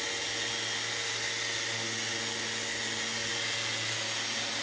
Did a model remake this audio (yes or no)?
no